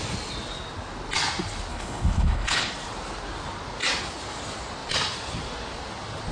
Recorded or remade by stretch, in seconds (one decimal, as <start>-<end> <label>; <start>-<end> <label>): 0.0-1.7 recorded; 1.7-2.7 remade; 2.7-6.3 recorded